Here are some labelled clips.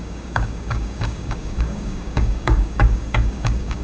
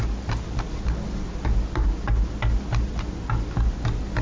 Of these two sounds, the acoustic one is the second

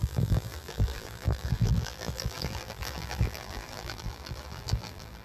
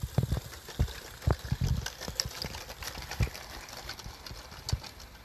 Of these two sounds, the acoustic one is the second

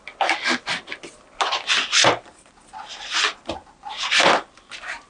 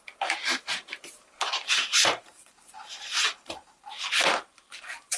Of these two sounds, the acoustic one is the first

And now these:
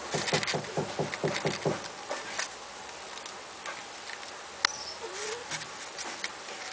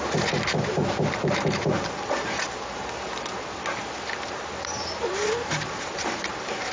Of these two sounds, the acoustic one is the first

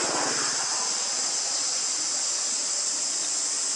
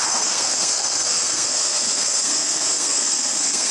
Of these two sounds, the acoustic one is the first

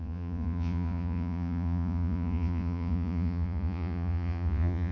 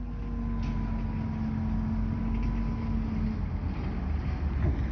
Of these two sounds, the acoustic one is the second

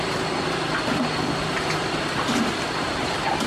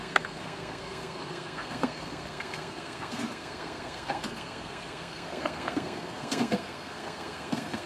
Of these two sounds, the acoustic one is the first